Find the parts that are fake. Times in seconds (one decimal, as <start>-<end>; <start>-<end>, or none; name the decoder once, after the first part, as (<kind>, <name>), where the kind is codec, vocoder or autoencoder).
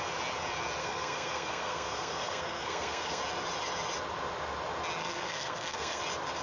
0.8-3.2 (codec, SNAC); 5.0-6.0